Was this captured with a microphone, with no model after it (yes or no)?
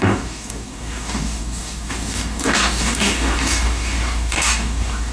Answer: no